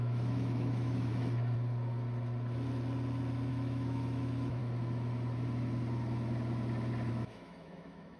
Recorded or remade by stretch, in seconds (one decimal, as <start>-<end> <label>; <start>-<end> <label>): 0.0-1.1 remade; 1.1-3.5 recorded; 3.5-4.6 remade; 4.6-7.1 recorded; 7.1-8.2 remade